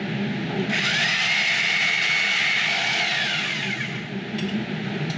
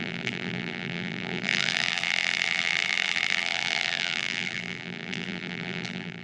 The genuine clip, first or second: first